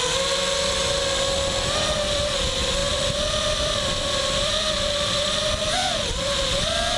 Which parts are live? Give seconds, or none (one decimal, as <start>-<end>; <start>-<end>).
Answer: 0.0-2.8